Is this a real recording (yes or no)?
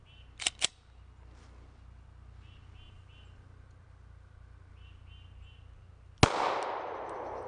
yes